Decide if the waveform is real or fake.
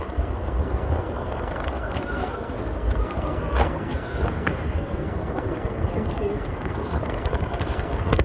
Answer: fake